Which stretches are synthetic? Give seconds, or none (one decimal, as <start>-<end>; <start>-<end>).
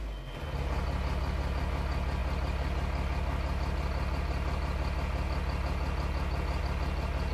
none